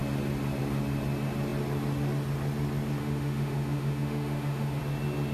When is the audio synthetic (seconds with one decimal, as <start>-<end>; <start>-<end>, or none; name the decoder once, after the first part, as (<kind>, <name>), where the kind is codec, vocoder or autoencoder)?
3.0-4.8 (autoencoder, DAC-VAE)